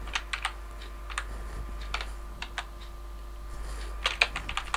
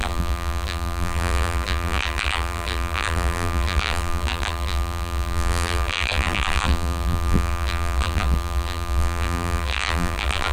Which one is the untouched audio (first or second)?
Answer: first